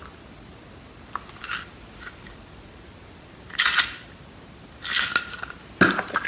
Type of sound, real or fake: real